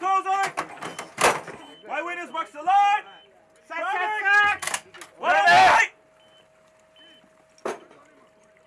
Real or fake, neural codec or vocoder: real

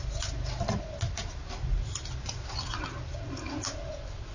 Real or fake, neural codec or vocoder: real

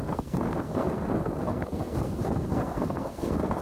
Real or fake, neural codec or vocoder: fake, codec, SNAC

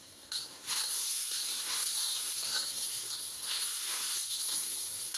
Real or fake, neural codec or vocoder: fake, codec, SNAC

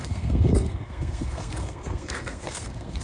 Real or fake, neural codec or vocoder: fake, codec, SNAC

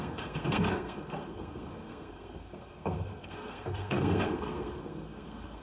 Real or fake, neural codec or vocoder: fake, codec, SNAC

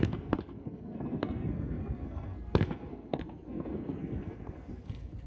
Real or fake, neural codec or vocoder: fake, codec, SNAC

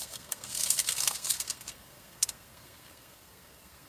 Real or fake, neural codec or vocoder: fake, codec, SNAC